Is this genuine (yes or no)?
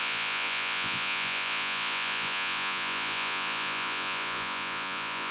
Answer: no